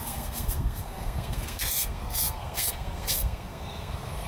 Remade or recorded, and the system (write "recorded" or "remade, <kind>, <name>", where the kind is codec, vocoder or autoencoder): remade, codec, SNAC